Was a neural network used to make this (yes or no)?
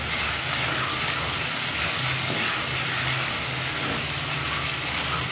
no